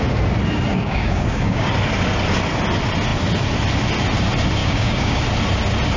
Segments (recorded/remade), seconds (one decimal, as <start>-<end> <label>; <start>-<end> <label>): 0.0-0.7 recorded; 0.7-1.7 remade; 1.7-4.6 recorded; 4.6-5.2 remade; 5.2-6.0 recorded